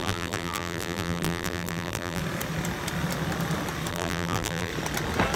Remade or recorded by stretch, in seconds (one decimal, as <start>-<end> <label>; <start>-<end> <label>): 0.0-2.2 remade; 2.2-3.9 recorded; 3.9-4.7 remade; 4.7-5.4 recorded